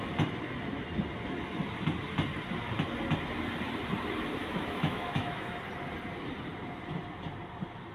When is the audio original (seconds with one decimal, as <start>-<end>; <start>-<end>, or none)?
0.0-4.4; 5.6-7.9

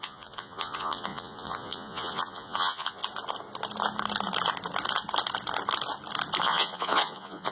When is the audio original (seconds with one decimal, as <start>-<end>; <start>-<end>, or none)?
3.0-6.4